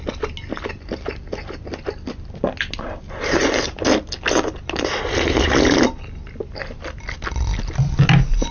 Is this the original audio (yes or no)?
yes